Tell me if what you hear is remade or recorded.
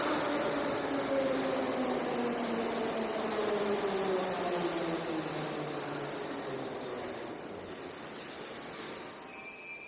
recorded